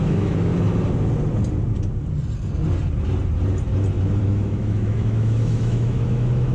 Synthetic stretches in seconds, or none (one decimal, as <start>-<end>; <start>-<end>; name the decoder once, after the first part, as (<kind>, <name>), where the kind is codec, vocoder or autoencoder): 0.0-0.5 (autoencoder, DAC-VAE); 4.2-6.5

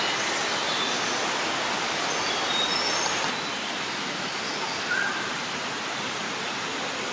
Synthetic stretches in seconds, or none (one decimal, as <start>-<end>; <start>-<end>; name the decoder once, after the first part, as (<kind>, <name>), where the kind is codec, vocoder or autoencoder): none